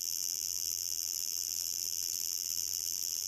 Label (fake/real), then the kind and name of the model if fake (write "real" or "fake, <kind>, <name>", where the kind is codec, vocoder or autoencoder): fake, vocoder, BigVGAN v2